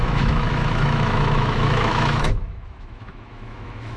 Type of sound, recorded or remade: remade